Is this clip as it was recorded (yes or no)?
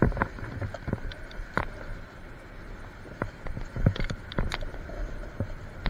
no